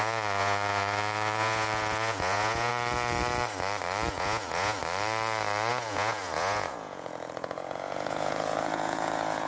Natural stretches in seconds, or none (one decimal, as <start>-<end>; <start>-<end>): 2.7-4.1; 4.8-5.7